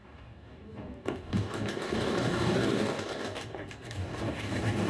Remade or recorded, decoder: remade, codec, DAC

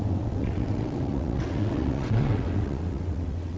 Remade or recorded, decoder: remade, vocoder, WaveNeXt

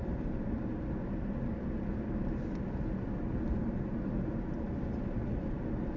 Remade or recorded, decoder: recorded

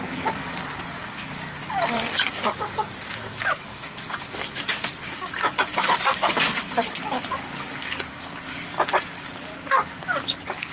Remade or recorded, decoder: remade, codec, DAC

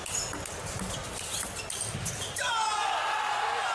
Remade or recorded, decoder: recorded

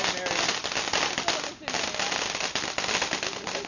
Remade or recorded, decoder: recorded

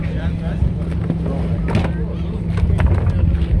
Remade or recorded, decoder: recorded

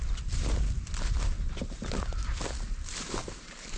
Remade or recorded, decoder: recorded